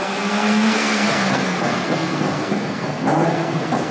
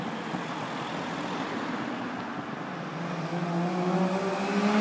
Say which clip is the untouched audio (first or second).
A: second